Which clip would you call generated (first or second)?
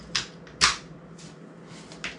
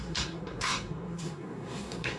second